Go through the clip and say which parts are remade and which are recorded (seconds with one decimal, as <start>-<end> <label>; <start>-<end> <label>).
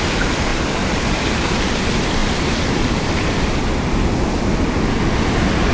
0.0-0.5 recorded; 0.5-1.6 remade; 1.6-2.2 recorded; 2.2-3.9 remade; 3.9-5.7 recorded